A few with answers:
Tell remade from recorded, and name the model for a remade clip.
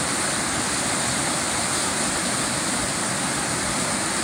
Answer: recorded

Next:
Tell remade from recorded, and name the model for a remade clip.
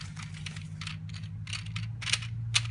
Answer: recorded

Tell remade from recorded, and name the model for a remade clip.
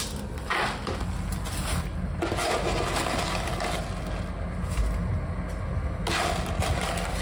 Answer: recorded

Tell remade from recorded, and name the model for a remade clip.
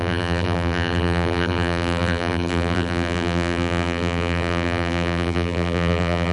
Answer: remade, vocoder, BigVGAN v2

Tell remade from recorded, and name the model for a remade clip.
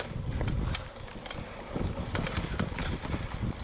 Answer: recorded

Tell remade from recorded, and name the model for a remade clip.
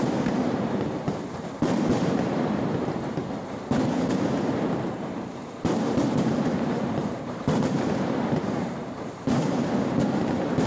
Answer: remade, vocoder, BigVGAN v2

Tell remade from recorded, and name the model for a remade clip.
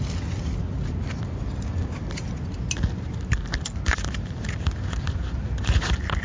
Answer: recorded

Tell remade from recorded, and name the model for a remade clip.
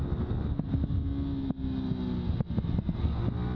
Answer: recorded